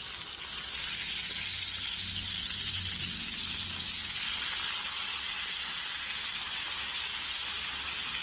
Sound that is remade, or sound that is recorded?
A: recorded